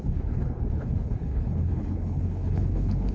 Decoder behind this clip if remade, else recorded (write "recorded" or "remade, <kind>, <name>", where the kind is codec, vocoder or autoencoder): remade, codec, HILCodec